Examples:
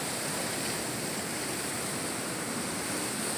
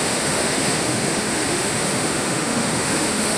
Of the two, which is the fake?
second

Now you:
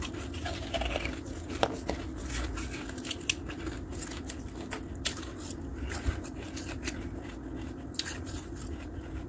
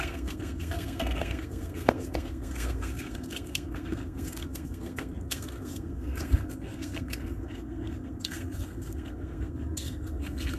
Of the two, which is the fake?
second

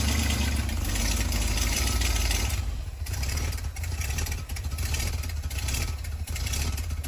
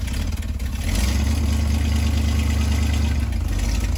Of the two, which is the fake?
first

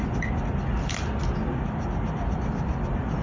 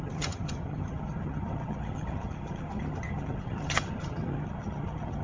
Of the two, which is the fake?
second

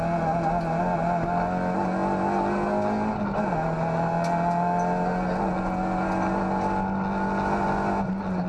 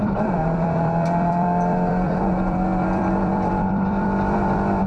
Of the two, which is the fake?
second